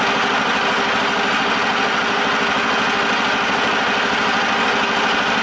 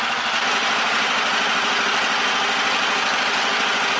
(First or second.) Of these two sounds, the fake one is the second